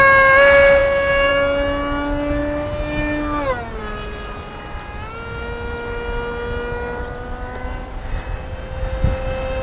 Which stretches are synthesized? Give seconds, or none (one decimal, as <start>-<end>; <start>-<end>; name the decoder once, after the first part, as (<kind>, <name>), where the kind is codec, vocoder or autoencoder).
none